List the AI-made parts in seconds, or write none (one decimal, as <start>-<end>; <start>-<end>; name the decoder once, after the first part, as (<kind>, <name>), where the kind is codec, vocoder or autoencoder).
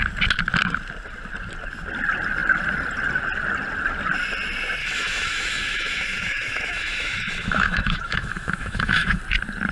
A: 4.8-9.2 (autoencoder, DAC-VAE)